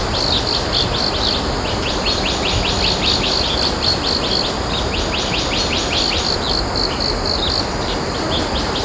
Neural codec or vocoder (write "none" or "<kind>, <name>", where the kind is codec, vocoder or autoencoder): none